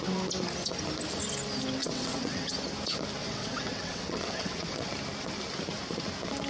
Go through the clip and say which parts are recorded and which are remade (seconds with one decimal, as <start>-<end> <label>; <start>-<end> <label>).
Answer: 0.0-1.8 recorded; 1.8-2.5 remade; 2.5-3.2 recorded; 3.2-4.9 remade; 4.9-6.5 recorded